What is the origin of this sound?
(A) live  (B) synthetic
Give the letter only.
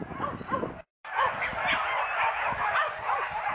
A